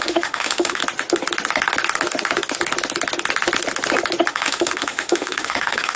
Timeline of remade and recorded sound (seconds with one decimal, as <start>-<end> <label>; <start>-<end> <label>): 0.0-0.8 remade; 0.8-4.3 recorded; 4.3-6.0 remade